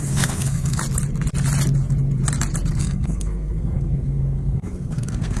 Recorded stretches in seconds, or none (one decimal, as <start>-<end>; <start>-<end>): 0.8-2.7